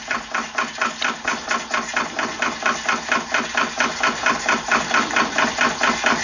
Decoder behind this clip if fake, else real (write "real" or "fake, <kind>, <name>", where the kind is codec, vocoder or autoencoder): real